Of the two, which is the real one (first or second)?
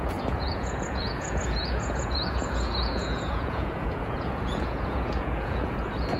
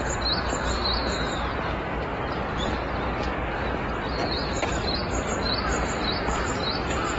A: second